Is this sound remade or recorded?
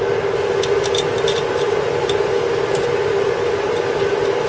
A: recorded